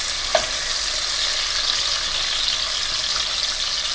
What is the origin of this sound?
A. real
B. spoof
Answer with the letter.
A